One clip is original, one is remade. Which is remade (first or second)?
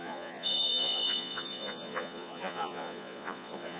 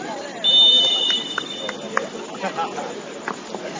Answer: first